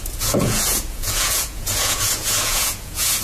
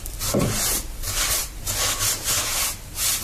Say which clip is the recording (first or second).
second